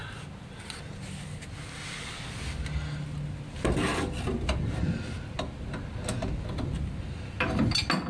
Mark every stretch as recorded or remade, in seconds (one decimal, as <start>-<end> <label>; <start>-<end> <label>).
0.0-8.1 recorded